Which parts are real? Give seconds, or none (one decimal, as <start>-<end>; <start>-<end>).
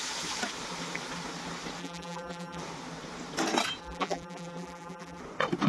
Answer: 0.0-1.8; 2.6-3.8; 5.2-5.7